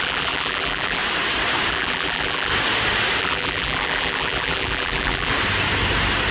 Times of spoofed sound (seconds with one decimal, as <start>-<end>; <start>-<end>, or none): 0.0-1.0; 1.7-2.5; 3.2-5.3